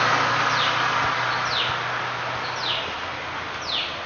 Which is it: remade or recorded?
recorded